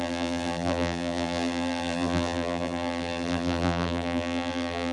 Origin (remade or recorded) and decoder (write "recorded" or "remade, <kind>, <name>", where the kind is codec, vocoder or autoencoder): remade, vocoder, BigVGAN v2